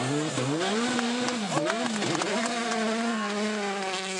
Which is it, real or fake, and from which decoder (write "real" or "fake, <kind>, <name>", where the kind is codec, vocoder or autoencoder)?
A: real